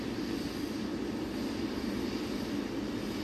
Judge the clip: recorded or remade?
recorded